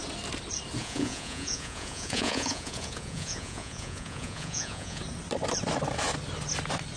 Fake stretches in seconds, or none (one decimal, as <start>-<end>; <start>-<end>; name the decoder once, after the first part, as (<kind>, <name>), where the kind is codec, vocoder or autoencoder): 0.8-5.0 (vocoder, Vocos)